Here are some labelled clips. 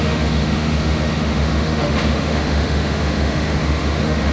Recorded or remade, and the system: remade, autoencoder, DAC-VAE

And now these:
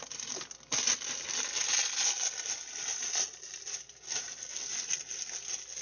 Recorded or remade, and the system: recorded